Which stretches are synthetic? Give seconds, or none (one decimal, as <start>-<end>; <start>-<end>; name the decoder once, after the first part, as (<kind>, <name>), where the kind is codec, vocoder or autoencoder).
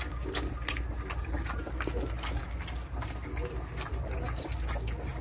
none